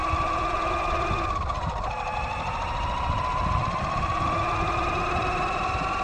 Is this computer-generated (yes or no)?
no